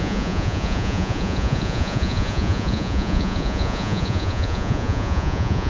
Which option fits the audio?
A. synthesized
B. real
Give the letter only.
A